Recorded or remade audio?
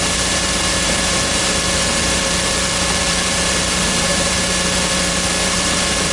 remade